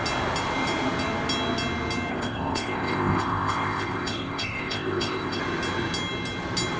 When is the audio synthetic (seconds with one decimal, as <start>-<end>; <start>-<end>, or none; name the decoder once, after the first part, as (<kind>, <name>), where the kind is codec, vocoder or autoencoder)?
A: 2.1-5.4 (codec, ZipCodec)